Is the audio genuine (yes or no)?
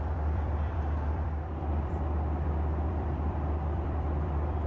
no